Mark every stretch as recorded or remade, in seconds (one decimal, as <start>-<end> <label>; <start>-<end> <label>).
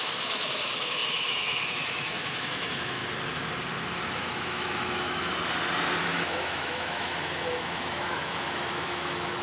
0.0-3.0 remade; 3.0-4.2 recorded; 4.2-5.3 remade; 5.3-6.0 recorded; 6.0-9.4 remade